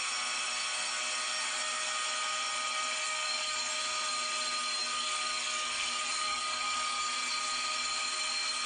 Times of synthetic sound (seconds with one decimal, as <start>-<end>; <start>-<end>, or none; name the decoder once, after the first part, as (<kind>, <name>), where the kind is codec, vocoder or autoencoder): 3.0-3.7 (codec, DAC); 4.8-7.0